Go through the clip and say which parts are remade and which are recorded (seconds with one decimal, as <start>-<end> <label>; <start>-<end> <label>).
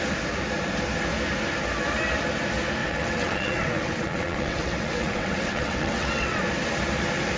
0.0-2.8 recorded; 2.8-6.4 remade; 6.4-7.4 recorded